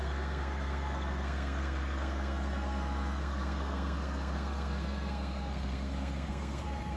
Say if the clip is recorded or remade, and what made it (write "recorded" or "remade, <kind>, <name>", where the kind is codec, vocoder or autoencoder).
remade, codec, SNAC